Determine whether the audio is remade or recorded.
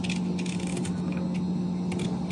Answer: recorded